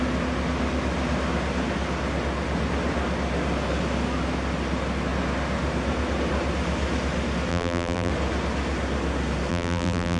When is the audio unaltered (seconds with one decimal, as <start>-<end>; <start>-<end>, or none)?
0.0-7.5; 8.1-9.5